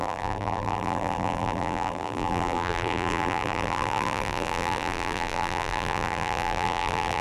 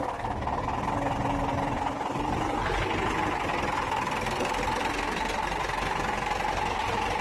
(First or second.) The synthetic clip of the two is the first